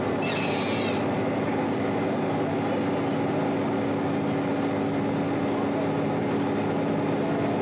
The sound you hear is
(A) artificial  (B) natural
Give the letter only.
B